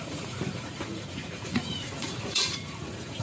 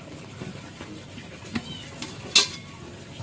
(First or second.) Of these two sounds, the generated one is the first